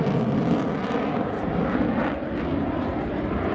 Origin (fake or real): real